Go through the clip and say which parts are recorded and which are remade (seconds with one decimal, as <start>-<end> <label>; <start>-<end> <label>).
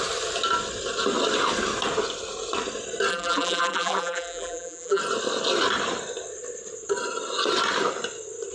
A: 0.0-3.1 recorded; 3.1-5.0 remade; 5.0-8.5 recorded